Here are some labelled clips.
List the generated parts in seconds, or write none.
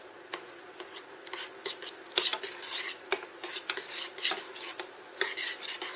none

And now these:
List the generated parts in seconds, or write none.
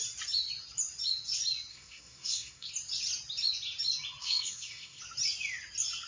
1.7-2.7; 4.2-5.0